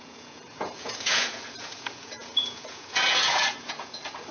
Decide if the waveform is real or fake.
fake